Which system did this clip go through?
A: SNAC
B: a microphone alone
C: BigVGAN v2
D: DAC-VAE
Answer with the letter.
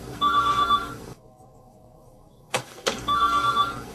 A